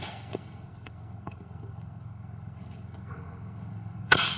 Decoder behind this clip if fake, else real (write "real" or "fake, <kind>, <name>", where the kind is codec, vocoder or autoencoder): fake, codec, SNAC